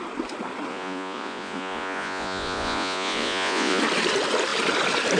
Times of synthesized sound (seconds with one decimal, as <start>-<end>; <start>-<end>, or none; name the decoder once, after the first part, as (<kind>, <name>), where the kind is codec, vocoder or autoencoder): 0.7-3.8 (vocoder, Vocos)